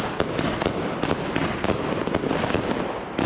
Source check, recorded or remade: recorded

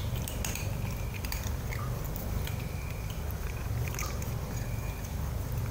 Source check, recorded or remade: remade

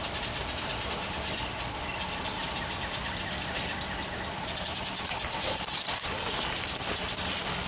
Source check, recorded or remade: remade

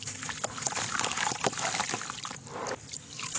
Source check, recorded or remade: recorded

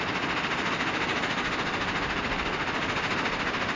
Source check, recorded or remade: recorded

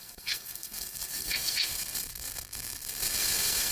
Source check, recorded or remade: remade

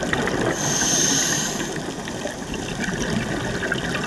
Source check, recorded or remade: recorded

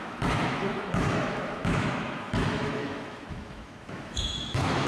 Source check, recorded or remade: remade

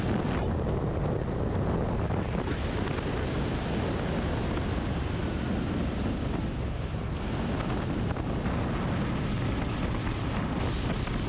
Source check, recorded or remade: recorded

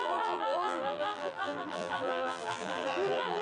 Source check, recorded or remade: remade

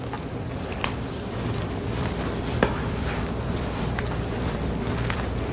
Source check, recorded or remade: remade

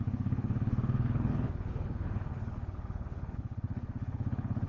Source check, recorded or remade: remade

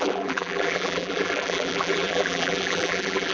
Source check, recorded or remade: remade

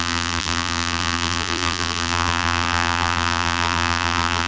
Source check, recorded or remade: remade